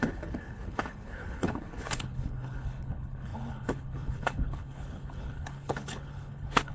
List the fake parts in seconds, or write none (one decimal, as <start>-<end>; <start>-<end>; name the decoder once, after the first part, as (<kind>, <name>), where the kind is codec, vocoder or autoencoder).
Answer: 0.0-6.7 (codec, HILCodec)